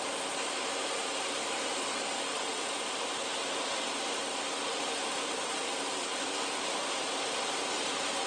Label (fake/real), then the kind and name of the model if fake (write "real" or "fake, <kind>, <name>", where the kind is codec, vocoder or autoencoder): fake, vocoder, BigVGAN v2